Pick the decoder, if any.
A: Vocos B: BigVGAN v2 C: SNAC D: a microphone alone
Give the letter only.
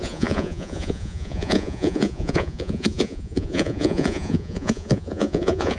A